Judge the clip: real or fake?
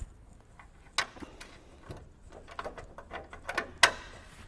real